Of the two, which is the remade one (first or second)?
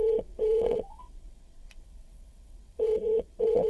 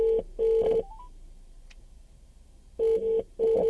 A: first